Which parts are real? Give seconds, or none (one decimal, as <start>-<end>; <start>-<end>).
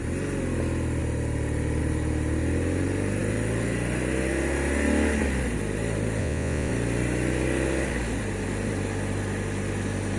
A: 0.0-6.2; 6.7-10.2